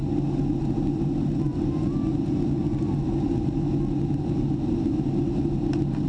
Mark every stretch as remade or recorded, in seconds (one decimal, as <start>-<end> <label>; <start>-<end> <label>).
0.0-6.1 recorded